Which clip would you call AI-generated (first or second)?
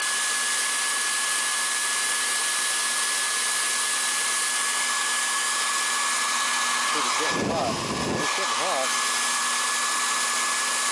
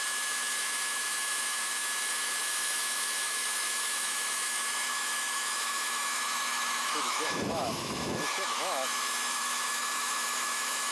second